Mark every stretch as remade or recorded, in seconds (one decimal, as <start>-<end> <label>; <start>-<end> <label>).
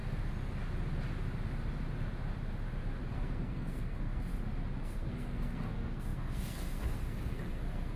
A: 0.0-3.1 recorded; 3.1-4.3 remade; 4.3-4.8 recorded; 4.8-8.0 remade